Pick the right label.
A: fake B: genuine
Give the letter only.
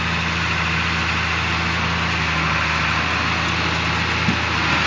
B